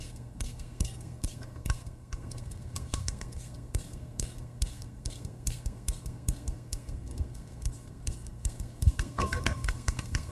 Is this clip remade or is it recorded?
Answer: remade